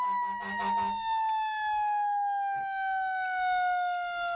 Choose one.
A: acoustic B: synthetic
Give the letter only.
A